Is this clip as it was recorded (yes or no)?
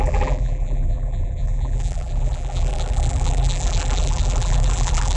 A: no